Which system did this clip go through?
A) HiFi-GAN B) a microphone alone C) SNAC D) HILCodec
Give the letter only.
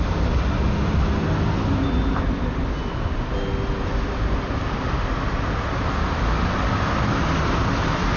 B